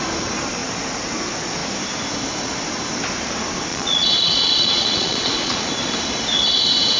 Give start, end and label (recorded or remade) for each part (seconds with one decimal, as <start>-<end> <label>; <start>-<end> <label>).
0.0-3.7 recorded; 3.7-5.7 remade; 5.7-7.0 recorded